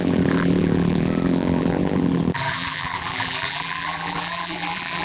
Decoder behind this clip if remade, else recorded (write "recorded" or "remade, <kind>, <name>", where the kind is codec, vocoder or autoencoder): remade, vocoder, BigVGAN v2